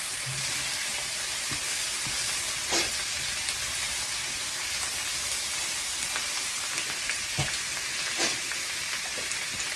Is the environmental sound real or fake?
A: real